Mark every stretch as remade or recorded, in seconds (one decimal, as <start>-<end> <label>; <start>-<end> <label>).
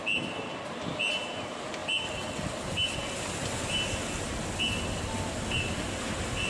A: 0.0-6.5 recorded